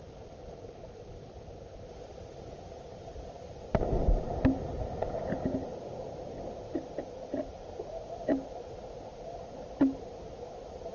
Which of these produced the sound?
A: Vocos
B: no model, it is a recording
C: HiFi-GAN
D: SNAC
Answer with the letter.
B